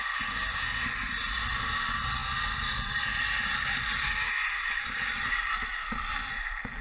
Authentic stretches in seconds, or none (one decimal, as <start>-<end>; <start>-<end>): 0.0-6.8